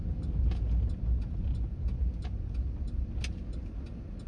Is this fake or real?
real